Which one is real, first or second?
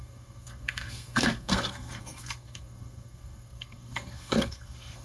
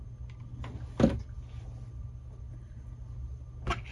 second